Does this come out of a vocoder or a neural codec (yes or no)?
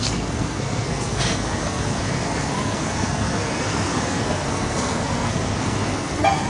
yes